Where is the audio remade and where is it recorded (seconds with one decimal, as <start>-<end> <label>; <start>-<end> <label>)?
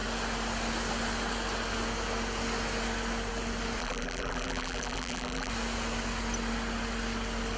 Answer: 0.0-3.8 recorded; 3.8-5.5 remade; 5.5-7.6 recorded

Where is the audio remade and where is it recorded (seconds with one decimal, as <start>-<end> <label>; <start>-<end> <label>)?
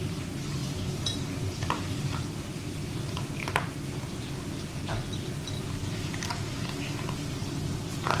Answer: 0.0-5.8 remade; 5.8-6.3 recorded; 6.3-8.2 remade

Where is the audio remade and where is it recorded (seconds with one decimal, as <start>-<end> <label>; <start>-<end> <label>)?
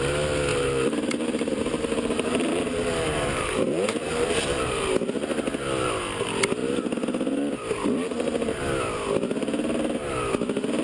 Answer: 0.0-0.5 recorded; 0.5-4.9 remade; 4.9-10.8 recorded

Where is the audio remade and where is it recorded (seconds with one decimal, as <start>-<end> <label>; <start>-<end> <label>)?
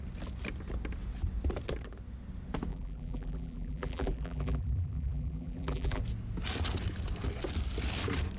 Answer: 0.0-2.7 recorded; 2.7-6.0 remade; 6.0-8.4 recorded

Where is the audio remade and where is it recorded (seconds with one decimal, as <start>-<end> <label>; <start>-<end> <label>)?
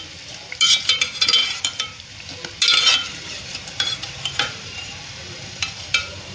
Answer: 0.0-1.4 recorded; 1.4-2.1 remade; 2.1-3.0 recorded; 3.0-6.3 remade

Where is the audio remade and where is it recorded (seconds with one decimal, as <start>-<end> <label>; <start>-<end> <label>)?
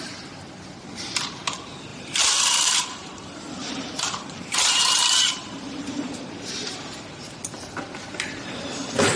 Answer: 0.0-1.9 recorded; 1.9-6.2 remade; 6.2-9.2 recorded